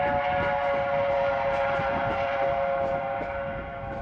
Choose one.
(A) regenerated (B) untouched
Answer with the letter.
B